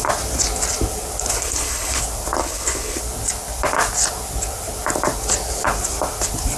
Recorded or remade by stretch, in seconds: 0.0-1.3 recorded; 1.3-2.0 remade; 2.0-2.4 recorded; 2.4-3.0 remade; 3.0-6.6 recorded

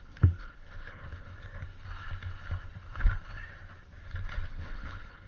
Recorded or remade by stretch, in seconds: 0.0-1.3 remade; 1.3-4.5 recorded; 4.5-5.3 remade

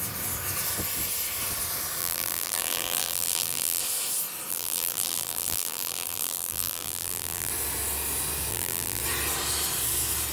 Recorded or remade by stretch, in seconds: 0.0-2.0 recorded; 2.0-3.8 remade; 3.8-4.5 recorded; 4.5-7.5 remade; 7.5-8.5 recorded; 8.5-9.0 remade; 9.0-10.3 recorded

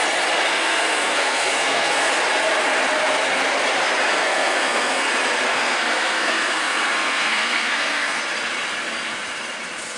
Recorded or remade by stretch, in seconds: 0.0-0.5 recorded; 0.5-2.1 remade; 2.1-4.1 recorded; 4.1-5.1 remade; 5.1-5.5 recorded; 5.5-8.2 remade; 8.2-10.0 recorded

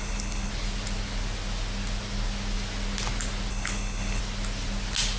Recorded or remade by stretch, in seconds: 0.0-0.5 remade; 0.5-3.5 recorded; 3.5-4.2 remade; 4.2-5.2 recorded

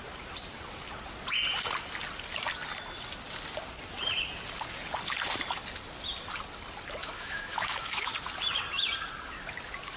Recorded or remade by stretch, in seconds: 0.0-7.0 recorded; 7.0-8.1 remade; 8.1-10.0 recorded